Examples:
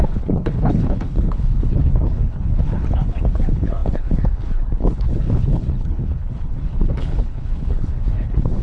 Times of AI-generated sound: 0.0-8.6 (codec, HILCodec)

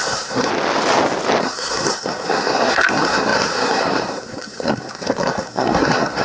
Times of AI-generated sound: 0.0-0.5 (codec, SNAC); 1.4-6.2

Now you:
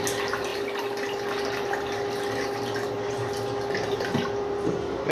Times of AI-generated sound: none

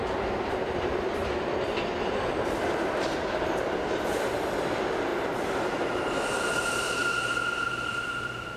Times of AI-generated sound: 0.0-7.0 (vocoder, BigVGAN v2); 7.7-8.6